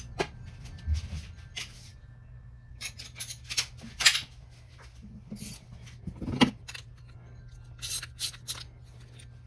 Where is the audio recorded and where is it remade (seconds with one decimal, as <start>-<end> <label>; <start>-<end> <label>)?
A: 0.0-1.9 recorded; 1.9-2.9 remade; 2.9-9.5 recorded

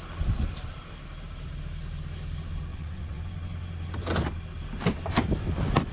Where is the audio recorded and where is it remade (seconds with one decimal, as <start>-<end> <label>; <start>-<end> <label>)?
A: 0.0-2.7 recorded; 2.7-3.2 remade; 3.2-5.9 recorded

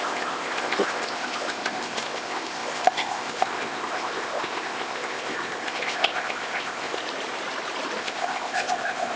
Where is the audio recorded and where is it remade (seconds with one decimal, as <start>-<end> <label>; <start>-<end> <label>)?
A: 0.0-7.0 remade; 7.0-8.0 recorded; 8.0-9.2 remade